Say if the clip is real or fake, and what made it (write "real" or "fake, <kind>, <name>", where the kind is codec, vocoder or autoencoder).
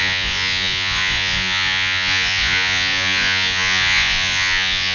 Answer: fake, vocoder, Vocos